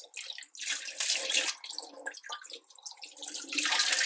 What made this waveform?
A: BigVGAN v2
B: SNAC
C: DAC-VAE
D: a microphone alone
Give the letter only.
D